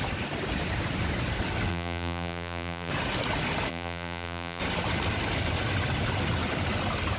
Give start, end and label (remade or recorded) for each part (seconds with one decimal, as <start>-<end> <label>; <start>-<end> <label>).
0.0-1.7 recorded; 1.7-2.9 remade; 2.9-3.7 recorded; 3.7-4.6 remade; 4.6-7.2 recorded